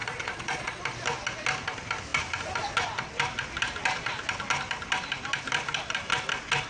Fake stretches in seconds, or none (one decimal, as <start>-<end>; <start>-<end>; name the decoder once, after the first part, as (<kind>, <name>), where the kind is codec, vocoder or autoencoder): 0.0-0.8 (vocoder, Vocos)